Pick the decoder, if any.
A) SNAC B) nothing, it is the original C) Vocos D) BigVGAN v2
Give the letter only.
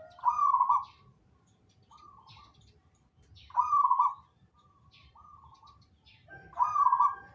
B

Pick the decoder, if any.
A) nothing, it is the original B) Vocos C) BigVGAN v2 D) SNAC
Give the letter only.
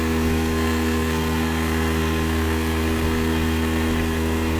D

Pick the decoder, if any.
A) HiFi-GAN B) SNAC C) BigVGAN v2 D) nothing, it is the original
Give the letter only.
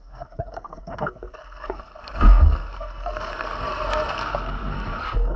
B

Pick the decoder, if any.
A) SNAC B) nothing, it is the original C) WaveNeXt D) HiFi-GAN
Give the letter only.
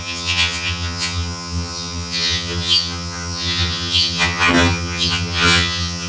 D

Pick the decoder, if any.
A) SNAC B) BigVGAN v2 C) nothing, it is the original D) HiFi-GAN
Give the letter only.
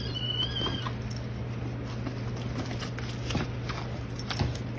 C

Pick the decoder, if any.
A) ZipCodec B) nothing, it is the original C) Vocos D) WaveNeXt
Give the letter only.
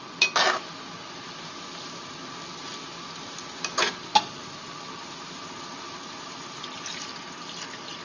B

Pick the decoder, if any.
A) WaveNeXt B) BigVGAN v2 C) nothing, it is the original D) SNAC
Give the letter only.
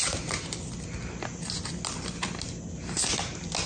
C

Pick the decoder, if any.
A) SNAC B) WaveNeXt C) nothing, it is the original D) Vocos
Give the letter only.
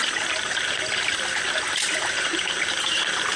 C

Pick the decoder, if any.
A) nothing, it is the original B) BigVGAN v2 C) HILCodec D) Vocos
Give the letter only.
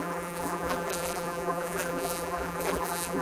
B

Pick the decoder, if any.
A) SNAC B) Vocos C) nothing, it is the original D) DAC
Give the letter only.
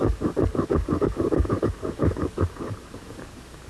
D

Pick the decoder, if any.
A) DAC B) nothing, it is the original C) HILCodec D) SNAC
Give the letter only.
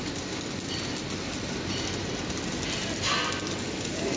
B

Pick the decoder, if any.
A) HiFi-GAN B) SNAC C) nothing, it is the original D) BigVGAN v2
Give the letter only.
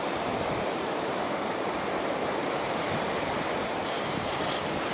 D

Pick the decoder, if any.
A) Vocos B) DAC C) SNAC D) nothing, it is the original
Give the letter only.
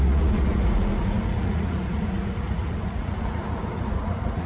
A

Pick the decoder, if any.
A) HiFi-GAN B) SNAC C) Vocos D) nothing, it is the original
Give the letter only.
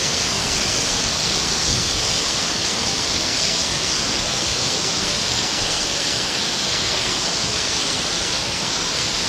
B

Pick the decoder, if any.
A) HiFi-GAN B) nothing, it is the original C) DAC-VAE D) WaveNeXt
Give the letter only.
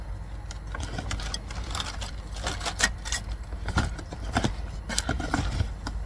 B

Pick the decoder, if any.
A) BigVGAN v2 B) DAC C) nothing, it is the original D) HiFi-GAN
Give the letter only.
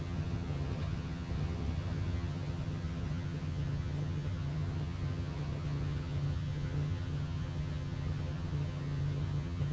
D